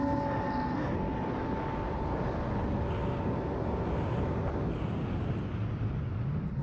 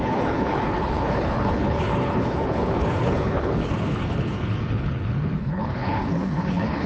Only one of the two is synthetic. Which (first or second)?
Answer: second